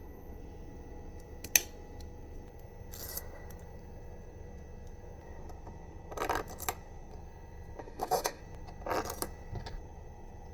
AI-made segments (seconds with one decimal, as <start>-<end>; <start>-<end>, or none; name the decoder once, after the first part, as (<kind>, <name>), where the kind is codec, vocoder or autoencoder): 7.8-8.4 (autoencoder, DAC-VAE)